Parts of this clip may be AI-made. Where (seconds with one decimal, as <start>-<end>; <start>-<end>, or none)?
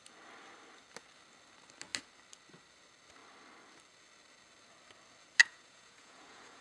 5.4-6.6